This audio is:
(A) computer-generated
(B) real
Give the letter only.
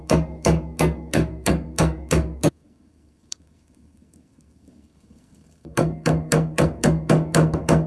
A